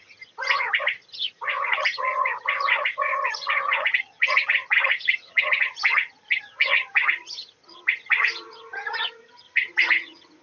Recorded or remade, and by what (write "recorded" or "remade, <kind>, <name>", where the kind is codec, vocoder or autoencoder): remade, vocoder, HiFi-GAN